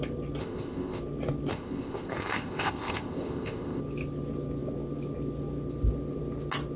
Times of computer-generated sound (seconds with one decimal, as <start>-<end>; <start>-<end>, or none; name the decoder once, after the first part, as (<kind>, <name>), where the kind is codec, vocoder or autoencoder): 0.4-1.0 (codec, ZipCodec); 1.5-3.8

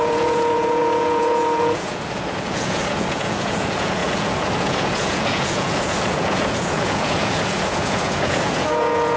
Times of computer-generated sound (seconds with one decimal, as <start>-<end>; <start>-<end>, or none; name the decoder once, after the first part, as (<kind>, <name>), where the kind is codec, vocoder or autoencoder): 0.0-9.2 (vocoder, Vocos)

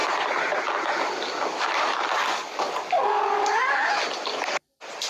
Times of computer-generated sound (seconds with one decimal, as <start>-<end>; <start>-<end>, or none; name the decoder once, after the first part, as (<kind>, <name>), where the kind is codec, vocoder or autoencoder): 2.2-3.7 (codec, DAC)